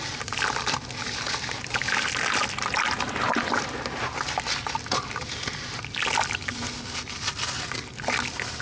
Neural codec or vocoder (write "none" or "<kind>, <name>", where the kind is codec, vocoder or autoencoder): none